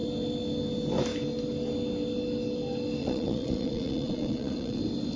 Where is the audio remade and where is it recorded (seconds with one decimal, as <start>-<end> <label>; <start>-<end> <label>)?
0.0-3.0 recorded; 3.0-4.8 remade; 4.8-5.2 recorded